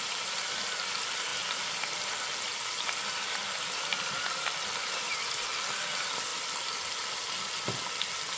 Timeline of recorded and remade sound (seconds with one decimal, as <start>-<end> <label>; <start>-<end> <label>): 0.0-8.4 recorded